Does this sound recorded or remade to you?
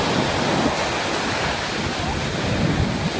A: recorded